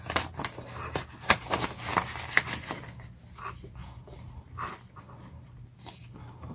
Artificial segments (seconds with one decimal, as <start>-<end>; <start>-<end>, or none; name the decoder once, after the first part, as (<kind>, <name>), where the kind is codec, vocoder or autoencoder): 1.9-2.6 (vocoder, BigVGAN v2); 3.8-4.3